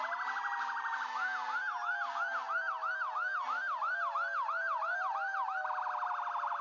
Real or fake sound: real